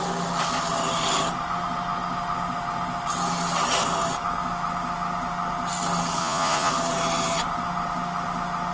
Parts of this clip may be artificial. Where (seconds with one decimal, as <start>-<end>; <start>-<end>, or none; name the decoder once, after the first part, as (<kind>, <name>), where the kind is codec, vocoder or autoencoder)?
6.2-6.7 (vocoder, Vocos)